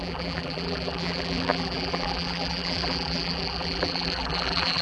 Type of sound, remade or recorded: remade